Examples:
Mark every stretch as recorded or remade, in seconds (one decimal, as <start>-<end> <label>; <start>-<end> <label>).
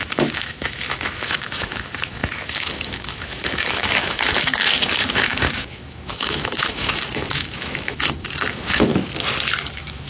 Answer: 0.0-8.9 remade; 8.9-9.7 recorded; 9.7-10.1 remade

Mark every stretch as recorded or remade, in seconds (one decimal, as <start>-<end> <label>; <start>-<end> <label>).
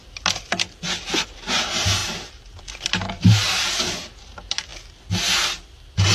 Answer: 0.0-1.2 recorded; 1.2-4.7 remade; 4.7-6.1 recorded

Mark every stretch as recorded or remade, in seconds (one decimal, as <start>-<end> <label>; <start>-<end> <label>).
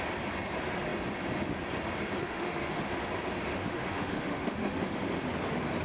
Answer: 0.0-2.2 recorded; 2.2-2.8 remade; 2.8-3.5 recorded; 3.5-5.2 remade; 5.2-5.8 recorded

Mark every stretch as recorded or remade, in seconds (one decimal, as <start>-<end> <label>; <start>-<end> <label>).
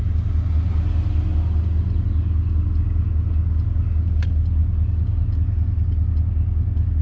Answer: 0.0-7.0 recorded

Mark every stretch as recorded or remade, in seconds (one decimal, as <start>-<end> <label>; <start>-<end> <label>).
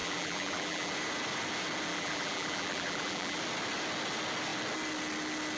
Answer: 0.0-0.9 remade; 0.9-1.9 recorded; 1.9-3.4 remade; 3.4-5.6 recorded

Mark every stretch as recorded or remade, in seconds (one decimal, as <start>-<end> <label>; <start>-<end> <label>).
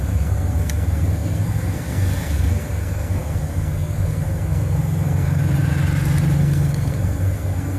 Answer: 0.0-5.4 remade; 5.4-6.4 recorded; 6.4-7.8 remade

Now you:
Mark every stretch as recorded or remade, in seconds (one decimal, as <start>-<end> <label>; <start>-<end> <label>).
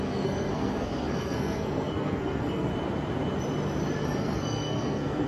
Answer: 0.0-2.7 remade; 2.7-4.2 recorded; 4.2-5.3 remade